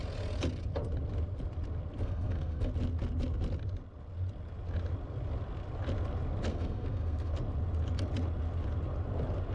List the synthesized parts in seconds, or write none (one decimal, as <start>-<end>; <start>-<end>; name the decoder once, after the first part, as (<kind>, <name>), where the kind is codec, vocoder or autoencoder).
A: 2.0-2.7 (codec, SNAC); 6.5-7.3